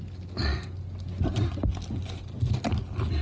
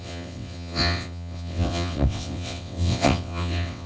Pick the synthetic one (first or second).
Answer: second